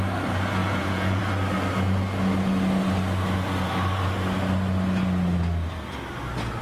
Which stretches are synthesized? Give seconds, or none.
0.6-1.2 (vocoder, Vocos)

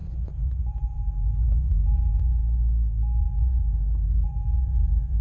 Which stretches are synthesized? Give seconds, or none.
0.0-2.4 (vocoder, Vocos); 3.2-5.2

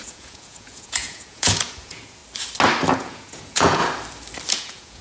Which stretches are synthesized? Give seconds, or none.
0.0-2.2 (vocoder, Vocos); 2.9-3.8; 4.5-5.0

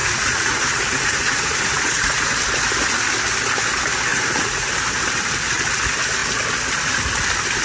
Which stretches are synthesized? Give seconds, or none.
0.0-2.3 (vocoder, Vocos); 4.1-4.7

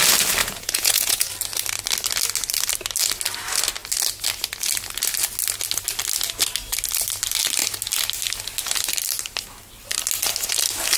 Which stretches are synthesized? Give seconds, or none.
0.4-1.3 (vocoder, Vocos)